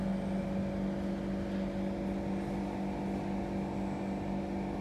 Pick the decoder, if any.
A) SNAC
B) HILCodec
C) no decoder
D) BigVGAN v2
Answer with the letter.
C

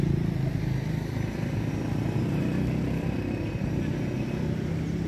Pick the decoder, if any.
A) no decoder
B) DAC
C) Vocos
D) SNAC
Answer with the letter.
A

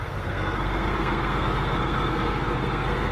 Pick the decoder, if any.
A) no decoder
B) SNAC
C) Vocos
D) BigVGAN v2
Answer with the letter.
B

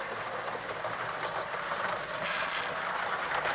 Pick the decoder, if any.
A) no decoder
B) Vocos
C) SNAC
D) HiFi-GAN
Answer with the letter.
A